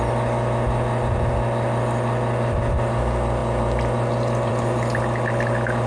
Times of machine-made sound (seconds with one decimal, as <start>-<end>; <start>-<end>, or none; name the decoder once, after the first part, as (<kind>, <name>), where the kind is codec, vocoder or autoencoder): none